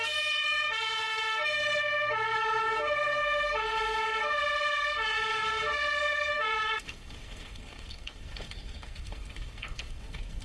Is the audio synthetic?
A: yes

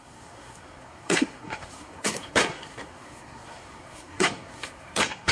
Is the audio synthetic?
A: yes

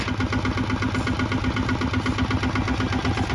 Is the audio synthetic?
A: no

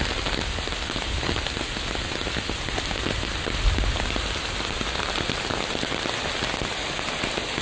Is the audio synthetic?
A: no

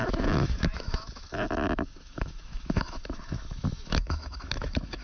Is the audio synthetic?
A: yes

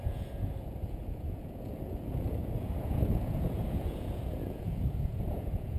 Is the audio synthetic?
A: yes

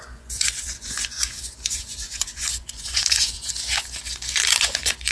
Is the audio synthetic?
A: yes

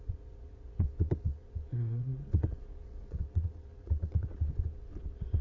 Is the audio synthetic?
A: yes